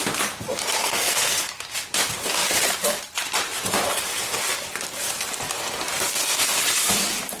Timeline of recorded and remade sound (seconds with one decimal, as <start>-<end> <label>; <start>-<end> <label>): 0.0-0.8 recorded; 0.8-1.5 remade; 1.5-7.4 recorded